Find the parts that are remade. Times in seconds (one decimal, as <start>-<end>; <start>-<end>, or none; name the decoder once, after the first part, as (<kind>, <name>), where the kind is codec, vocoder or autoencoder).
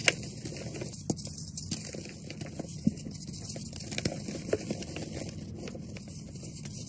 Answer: none